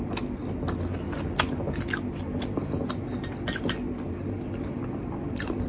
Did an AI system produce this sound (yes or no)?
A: no